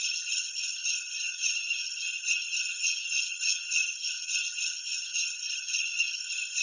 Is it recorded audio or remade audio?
remade